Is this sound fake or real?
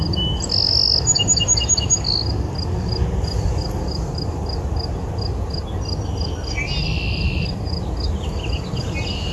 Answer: real